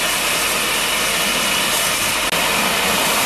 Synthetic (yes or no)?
no